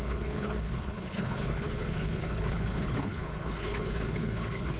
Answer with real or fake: fake